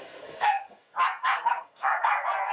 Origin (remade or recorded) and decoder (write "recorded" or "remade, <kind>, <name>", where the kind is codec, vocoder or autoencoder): remade, codec, SNAC